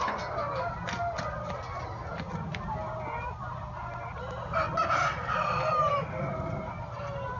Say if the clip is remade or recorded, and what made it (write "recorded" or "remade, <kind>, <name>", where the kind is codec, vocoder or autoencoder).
recorded